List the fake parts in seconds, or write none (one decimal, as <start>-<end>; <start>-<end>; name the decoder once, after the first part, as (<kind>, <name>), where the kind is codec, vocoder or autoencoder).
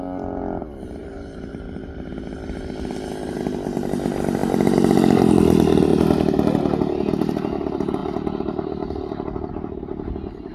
1.0-2.1 (vocoder, BigVGAN v2)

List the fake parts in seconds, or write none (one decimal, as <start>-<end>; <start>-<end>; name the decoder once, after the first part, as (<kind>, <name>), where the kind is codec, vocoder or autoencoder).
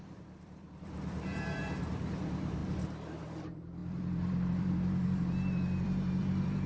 0.0-2.6 (vocoder, BigVGAN v2); 3.2-6.7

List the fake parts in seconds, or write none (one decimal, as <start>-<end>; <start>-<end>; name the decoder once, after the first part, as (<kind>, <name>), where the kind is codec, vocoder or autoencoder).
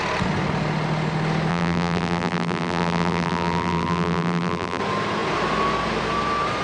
1.5-4.8 (vocoder, BigVGAN v2)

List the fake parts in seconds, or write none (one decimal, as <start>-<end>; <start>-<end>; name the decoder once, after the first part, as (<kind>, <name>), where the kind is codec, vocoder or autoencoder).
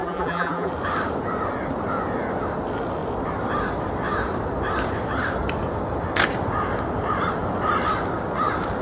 0.0-0.7 (vocoder, BigVGAN v2)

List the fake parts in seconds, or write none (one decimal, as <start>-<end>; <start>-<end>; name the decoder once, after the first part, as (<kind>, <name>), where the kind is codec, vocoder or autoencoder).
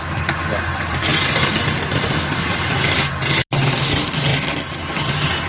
1.1-2.7 (vocoder, BigVGAN v2)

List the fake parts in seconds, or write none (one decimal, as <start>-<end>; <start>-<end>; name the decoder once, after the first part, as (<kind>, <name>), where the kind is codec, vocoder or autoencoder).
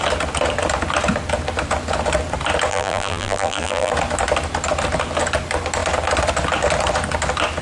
2.7-3.9 (vocoder, BigVGAN v2)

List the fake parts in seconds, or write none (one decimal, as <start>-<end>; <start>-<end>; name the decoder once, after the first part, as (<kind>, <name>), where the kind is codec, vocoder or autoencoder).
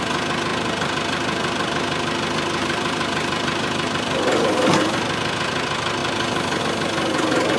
0.5-4.8 (vocoder, BigVGAN v2); 6.0-6.6